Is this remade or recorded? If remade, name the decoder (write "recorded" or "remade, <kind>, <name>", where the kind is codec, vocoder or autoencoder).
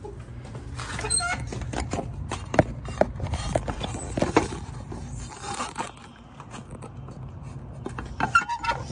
recorded